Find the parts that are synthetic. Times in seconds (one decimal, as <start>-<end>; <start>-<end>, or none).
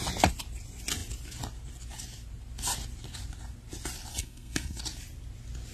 4.1-4.8